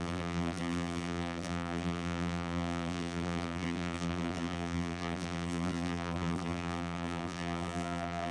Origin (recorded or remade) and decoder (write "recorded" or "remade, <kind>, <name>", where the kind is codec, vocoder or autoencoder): remade, vocoder, BigVGAN v2